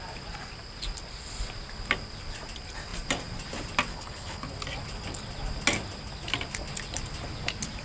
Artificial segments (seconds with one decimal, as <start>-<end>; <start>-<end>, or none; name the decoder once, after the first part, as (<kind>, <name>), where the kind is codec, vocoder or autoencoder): 3.9-4.5 (codec, HILCodec)